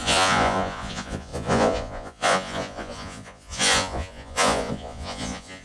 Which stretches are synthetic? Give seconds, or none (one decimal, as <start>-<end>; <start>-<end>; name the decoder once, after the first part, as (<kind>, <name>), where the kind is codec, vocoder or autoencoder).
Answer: 0.0-5.6 (vocoder, Vocos)